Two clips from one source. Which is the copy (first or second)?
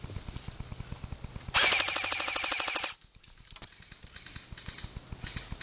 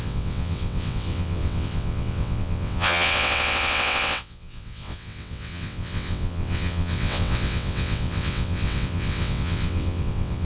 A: second